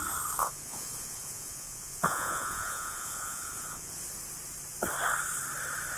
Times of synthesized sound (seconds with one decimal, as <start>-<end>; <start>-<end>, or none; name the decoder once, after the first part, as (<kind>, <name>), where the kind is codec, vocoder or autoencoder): 0.4-4.0 (vocoder, Vocos)